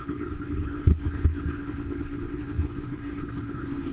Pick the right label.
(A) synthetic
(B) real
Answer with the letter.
A